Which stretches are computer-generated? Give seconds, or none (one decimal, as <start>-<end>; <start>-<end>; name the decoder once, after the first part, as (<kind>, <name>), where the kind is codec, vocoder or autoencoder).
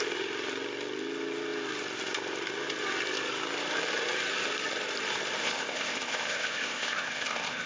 5.4-7.7 (codec, ZipCodec)